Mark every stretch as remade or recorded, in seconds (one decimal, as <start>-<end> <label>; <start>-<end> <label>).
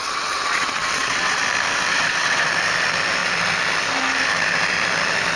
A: 0.0-1.4 remade; 1.4-1.9 recorded; 1.9-2.5 remade; 2.5-5.4 recorded